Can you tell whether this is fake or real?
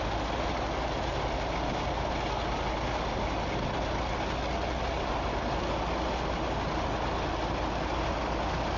real